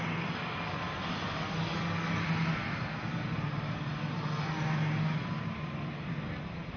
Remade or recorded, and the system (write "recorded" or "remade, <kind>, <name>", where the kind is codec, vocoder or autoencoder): recorded